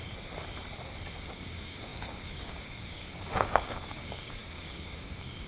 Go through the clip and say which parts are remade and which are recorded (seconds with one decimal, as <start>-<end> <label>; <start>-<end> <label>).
0.0-1.2 recorded; 1.2-5.5 remade